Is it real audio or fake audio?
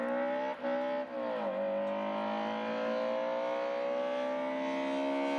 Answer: real